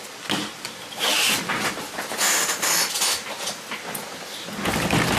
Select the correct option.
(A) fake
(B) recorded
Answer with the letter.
B